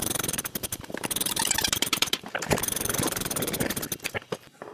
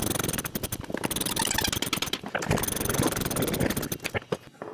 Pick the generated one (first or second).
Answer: first